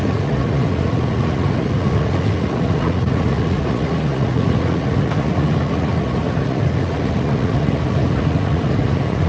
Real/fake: fake